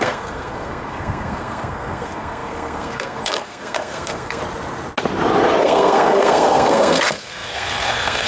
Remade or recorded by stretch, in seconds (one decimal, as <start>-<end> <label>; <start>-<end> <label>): 0.0-4.4 remade; 4.4-5.6 recorded; 5.6-8.3 remade